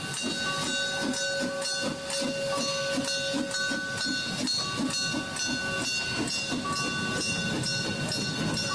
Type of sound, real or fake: real